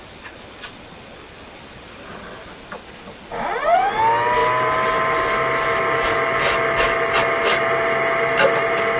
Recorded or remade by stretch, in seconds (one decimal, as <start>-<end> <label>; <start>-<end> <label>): 0.0-3.3 recorded; 3.3-4.0 remade; 4.0-9.0 recorded